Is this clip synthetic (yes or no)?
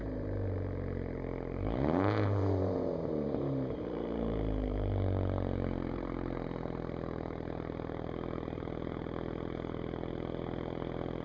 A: yes